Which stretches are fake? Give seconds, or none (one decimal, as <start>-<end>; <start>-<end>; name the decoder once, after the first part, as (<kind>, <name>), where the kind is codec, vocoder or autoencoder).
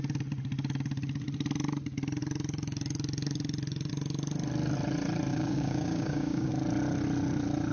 5.3-6.5 (codec, DAC)